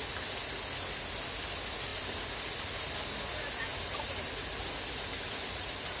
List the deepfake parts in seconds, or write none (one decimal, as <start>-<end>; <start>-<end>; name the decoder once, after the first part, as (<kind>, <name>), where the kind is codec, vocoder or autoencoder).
none